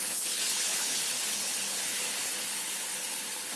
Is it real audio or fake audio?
fake